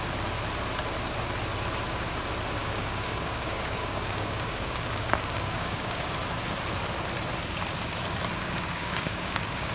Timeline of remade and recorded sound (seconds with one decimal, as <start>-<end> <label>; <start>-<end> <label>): 0.0-2.6 recorded; 2.6-6.1 remade; 6.1-8.4 recorded; 8.4-9.7 remade